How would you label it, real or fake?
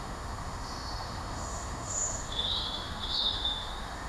fake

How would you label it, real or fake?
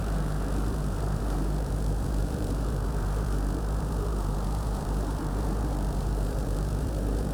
fake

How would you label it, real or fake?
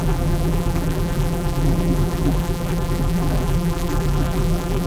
fake